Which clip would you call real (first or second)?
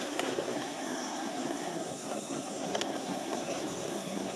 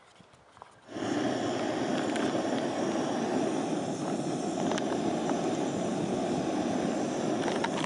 second